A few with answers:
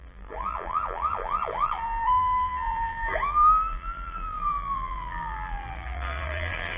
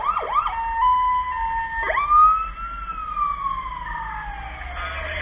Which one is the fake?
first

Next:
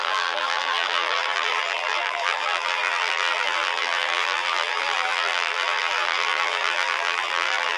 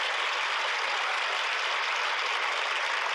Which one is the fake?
first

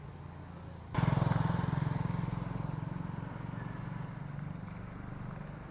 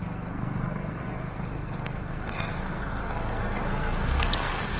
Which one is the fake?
second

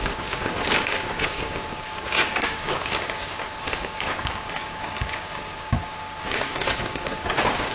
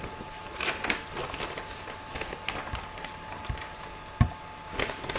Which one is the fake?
first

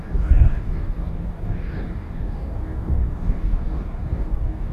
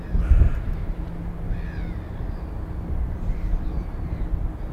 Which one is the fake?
first